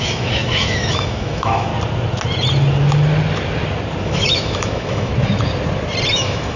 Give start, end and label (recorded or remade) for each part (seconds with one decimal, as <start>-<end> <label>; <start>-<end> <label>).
0.0-1.7 remade; 1.7-4.0 recorded; 4.0-5.1 remade; 5.1-6.1 recorded; 6.1-6.6 remade